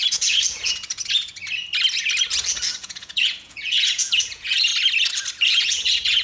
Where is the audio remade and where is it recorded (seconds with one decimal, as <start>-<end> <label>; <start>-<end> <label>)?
0.0-1.4 remade; 1.4-2.8 recorded; 2.8-4.7 remade; 4.7-5.5 recorded; 5.5-6.2 remade